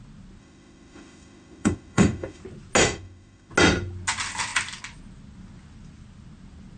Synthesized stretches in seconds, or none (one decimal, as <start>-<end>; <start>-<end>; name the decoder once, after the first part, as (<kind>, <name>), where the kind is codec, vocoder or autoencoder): 0.4-2.4 (autoencoder, DAC-VAE); 2.8-3.5